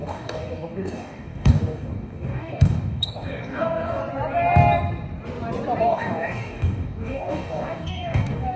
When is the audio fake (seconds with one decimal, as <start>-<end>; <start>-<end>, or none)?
0.0-4.0; 5.8-8.6